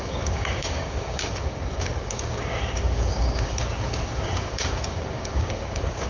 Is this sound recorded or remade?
remade